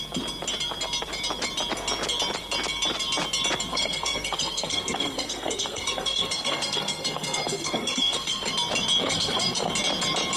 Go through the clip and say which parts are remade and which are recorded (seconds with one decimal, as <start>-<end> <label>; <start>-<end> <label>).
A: 0.0-3.7 recorded; 3.7-8.5 remade; 8.5-9.0 recorded; 9.0-9.7 remade; 9.7-10.4 recorded